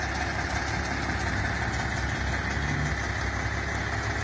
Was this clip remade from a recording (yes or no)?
no